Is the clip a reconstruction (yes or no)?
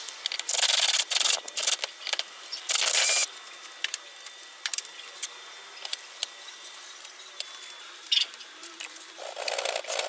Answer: yes